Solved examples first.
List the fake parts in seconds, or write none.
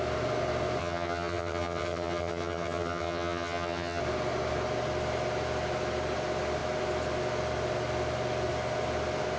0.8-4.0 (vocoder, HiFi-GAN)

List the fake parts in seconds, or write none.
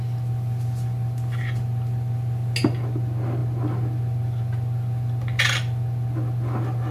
none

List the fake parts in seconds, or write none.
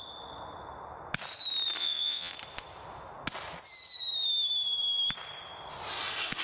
1.8-2.3 (vocoder, Vocos)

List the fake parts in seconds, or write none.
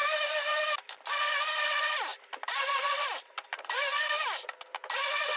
none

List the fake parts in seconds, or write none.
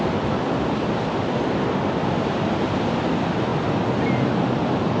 none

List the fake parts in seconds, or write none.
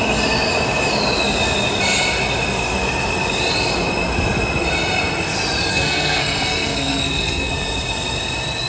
5.7-7.5 (codec, SNAC)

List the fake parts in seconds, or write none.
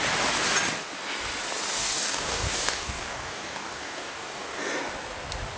1.8-4.6 (codec, DAC)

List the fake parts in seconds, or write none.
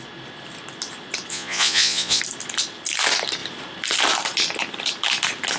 1.3-2.2 (vocoder, Vocos)